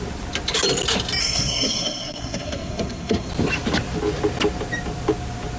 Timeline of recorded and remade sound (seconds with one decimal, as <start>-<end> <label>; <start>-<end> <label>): 0.0-1.2 recorded; 1.2-3.3 remade; 3.3-5.6 recorded